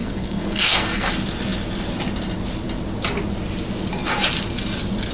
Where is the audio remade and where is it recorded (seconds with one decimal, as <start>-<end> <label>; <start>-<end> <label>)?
0.0-1.1 remade; 1.1-5.1 recorded